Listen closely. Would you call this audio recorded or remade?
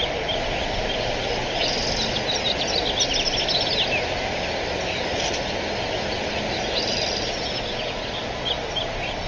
recorded